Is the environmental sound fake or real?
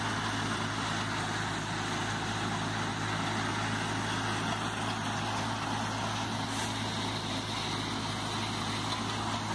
real